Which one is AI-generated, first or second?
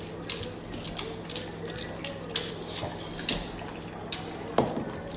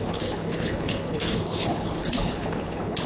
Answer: second